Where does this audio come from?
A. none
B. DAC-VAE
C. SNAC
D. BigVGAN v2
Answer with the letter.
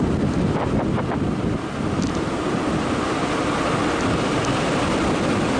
A